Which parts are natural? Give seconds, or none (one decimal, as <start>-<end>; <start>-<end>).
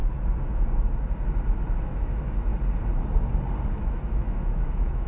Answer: 0.0-1.8; 2.5-3.7